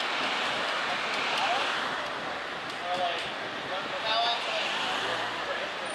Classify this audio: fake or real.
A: real